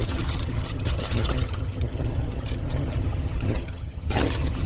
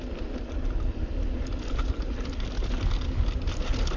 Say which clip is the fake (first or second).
first